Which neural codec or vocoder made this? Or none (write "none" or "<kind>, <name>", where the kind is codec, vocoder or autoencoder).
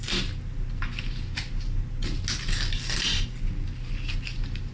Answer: none